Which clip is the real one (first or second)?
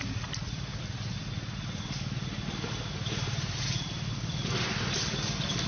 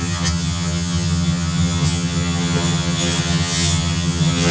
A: first